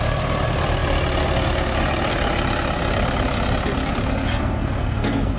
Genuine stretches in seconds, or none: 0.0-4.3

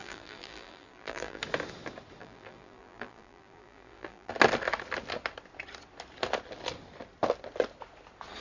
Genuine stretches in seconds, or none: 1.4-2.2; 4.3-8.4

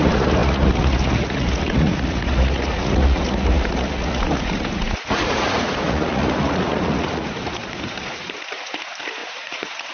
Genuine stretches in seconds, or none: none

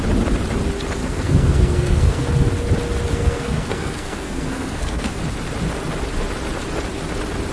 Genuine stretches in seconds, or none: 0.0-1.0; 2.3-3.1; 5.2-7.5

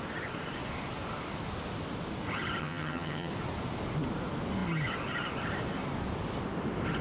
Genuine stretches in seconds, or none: 0.0-2.6; 3.3-7.0